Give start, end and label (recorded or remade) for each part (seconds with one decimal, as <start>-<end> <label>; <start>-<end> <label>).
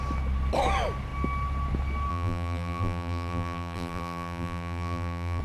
0.0-2.1 recorded; 2.1-5.4 remade